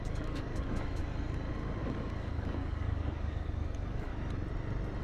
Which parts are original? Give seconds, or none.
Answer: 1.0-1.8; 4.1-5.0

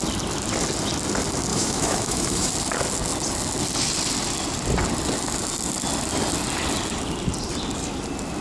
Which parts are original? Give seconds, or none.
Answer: 0.0-1.5; 2.5-8.4

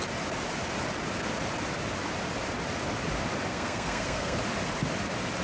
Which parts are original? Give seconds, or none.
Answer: 0.0-3.5; 4.4-5.4